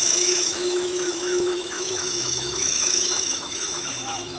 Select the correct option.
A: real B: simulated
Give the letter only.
B